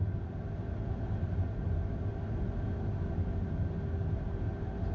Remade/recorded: recorded